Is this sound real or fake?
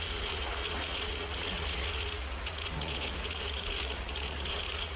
fake